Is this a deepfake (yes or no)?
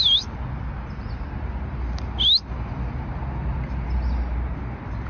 no